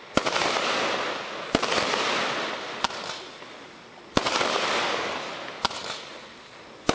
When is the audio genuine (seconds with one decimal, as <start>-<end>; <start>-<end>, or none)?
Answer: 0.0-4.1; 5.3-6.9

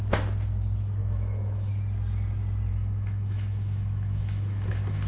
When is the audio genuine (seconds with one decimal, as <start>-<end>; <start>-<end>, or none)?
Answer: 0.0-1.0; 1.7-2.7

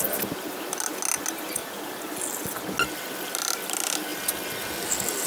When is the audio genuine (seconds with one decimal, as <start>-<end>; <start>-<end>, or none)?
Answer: 0.0-5.3